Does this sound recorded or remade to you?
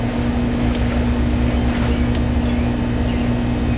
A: recorded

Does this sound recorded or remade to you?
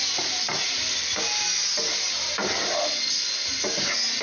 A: recorded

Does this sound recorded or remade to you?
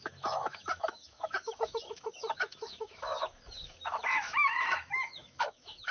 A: remade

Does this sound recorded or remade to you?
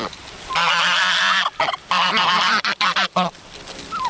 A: remade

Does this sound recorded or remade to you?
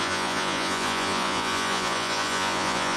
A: remade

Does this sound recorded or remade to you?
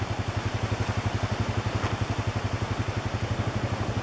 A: recorded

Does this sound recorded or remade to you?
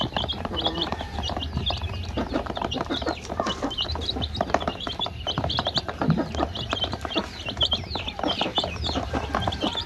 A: remade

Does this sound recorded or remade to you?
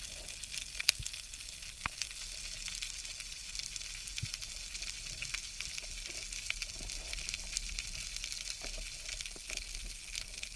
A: recorded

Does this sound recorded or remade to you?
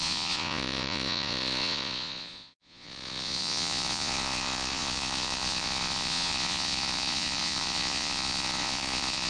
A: remade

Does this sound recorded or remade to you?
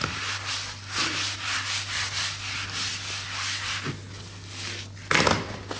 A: recorded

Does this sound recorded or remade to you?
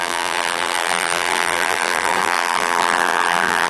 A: remade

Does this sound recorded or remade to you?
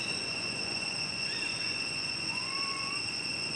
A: remade